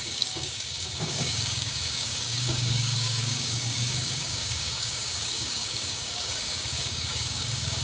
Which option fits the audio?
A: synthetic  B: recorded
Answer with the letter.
A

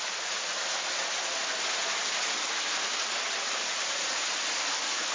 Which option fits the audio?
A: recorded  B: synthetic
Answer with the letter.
A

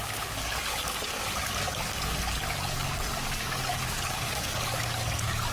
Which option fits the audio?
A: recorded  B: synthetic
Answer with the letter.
B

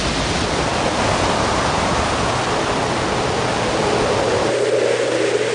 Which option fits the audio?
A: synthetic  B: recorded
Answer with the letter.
B